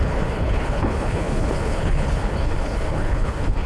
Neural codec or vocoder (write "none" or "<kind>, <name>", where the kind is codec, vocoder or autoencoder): codec, HILCodec